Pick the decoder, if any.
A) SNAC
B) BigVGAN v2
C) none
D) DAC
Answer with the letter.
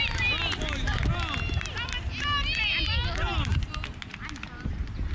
C